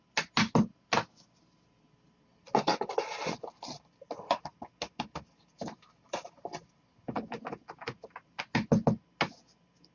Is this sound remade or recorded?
recorded